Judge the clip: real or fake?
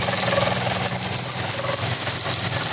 real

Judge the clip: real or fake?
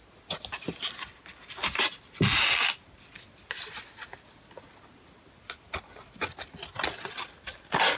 real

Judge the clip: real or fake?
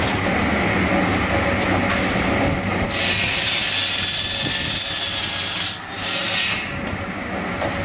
real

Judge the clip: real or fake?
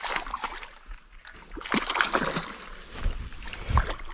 real